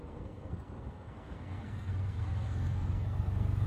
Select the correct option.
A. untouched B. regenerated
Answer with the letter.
B